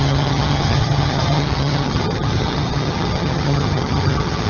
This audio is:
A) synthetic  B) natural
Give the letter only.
A